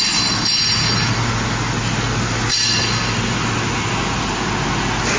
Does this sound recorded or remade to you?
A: recorded